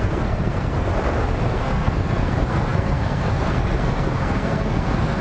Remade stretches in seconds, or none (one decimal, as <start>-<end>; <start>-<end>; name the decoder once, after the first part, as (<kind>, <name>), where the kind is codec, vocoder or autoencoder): 0.0-0.9 (codec, SNAC); 1.5-5.2